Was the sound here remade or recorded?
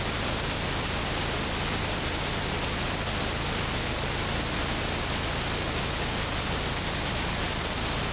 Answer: recorded